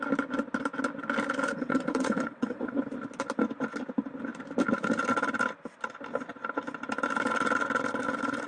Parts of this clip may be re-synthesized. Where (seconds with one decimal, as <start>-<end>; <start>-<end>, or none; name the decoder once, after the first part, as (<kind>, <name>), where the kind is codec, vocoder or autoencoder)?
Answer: 1.5-2.8 (vocoder, WaveNeXt)